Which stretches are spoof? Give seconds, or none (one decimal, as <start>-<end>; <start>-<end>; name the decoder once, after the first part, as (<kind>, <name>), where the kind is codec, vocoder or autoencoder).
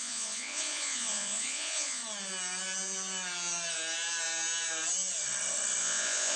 0.0-2.0 (vocoder, Vocos); 5.8-6.4